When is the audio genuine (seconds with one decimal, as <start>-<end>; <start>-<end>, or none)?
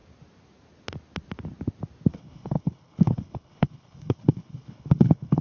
0.0-2.1